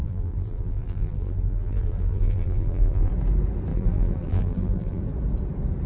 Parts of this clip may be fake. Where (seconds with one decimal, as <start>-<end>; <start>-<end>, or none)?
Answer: 0.0-3.1; 3.7-5.0